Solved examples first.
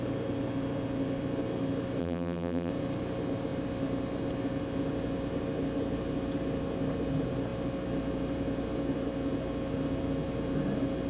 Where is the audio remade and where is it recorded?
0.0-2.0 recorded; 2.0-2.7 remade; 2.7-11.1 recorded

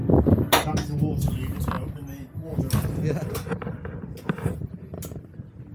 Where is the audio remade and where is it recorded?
0.0-5.7 recorded

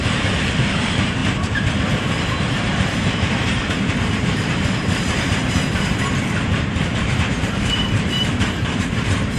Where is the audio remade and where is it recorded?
0.0-1.2 remade; 1.2-2.2 recorded; 2.2-9.4 remade